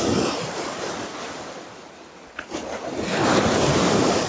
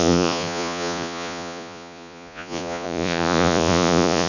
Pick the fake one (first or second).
second